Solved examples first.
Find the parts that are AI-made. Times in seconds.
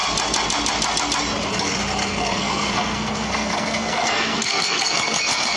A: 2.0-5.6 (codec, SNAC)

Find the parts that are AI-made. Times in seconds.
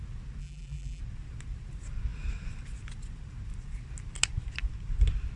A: 0.4-1.0 (vocoder, BigVGAN v2)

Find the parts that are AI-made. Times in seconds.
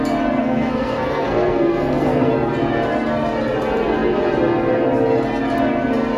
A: 0.4-2.3 (codec, SNAC)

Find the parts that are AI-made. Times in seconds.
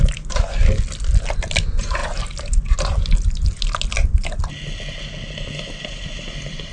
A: none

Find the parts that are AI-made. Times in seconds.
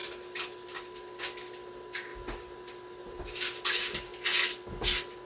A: 0.0-1.2 (vocoder, BigVGAN v2); 2.1-3.2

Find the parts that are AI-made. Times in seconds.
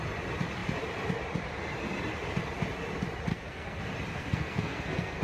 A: 3.3-3.8 (codec, SNAC); 4.2-5.2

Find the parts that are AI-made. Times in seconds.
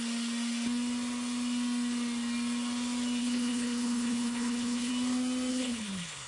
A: 3.2-4.9 (codec, HILCodec); 5.5-6.3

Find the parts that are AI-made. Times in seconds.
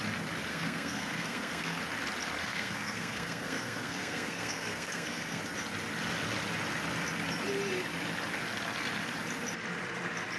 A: 0.5-1.8 (codec, SNAC); 2.4-5.4